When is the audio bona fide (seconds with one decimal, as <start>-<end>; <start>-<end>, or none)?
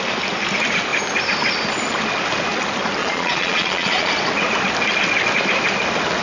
0.0-3.0; 4.1-6.2